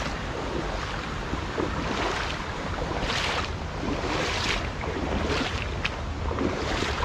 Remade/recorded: recorded